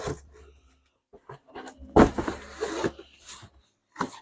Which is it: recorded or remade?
recorded